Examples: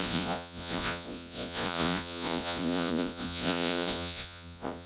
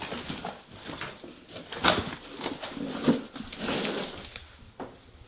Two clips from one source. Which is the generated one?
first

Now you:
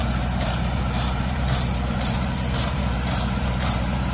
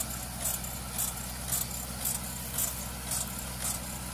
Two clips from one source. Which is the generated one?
first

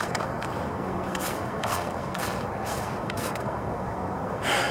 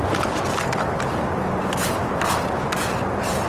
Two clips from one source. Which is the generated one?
first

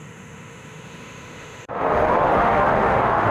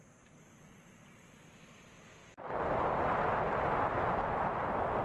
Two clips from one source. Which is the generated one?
first